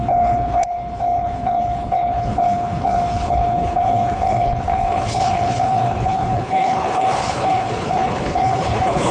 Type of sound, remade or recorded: remade